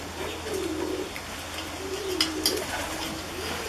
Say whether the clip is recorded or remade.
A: recorded